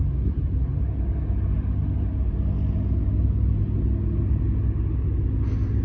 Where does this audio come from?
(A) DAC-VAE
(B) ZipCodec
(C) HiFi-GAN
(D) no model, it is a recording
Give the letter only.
D